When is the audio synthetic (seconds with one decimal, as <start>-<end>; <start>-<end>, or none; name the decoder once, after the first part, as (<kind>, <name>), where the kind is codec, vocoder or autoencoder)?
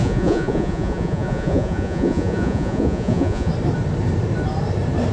0.0-3.5 (vocoder, Vocos)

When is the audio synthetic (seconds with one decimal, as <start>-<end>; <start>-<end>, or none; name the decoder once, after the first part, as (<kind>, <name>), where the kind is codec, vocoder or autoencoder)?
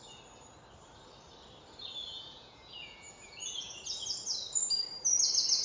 2.0-3.8 (vocoder, Vocos)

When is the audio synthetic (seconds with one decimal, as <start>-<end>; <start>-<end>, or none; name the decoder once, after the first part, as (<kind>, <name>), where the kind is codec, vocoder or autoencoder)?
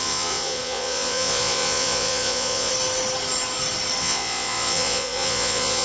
0.0-2.7 (vocoder, Vocos); 4.0-5.8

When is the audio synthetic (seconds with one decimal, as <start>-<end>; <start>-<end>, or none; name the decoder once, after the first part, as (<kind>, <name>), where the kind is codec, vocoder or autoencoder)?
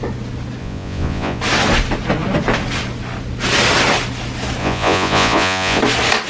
0.6-1.4 (vocoder, Vocos); 4.6-5.8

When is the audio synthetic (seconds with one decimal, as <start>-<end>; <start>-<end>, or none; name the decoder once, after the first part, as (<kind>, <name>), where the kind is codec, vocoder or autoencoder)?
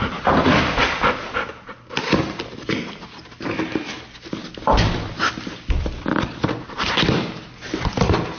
none